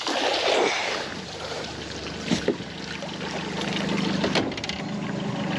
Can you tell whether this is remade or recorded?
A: recorded